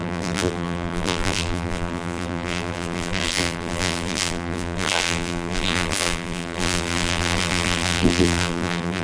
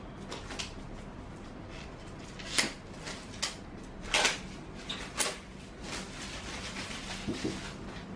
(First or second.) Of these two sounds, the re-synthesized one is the first